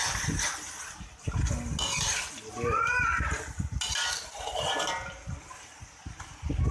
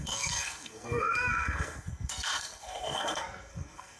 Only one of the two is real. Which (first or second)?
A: first